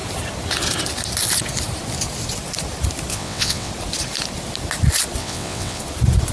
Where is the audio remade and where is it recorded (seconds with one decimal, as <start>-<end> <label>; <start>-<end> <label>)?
0.0-3.1 recorded; 3.1-3.7 remade; 3.7-5.2 recorded; 5.2-5.8 remade; 5.8-6.3 recorded